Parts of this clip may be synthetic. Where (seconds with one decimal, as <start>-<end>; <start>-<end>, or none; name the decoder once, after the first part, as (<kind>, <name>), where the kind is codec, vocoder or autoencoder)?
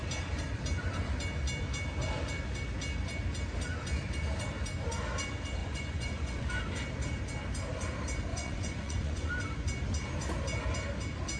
5.6-6.5 (vocoder, Vocos); 8.3-9.3